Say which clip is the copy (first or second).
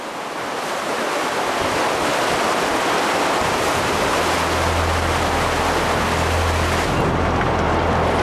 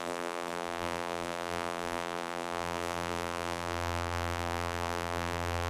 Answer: second